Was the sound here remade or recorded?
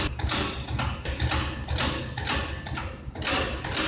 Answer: recorded